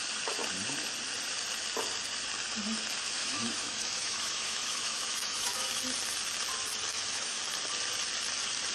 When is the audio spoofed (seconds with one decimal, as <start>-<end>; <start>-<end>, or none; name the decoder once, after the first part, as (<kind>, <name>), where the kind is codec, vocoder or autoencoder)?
3.2-5.8 (autoencoder, DAC-VAE); 6.9-7.4